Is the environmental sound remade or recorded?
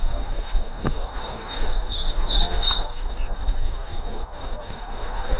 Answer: remade